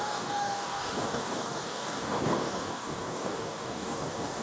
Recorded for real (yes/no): no